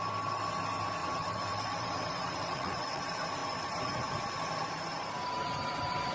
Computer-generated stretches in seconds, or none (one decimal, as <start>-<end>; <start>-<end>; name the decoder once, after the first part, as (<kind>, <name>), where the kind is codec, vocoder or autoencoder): 1.0-3.0 (vocoder, WaveNeXt)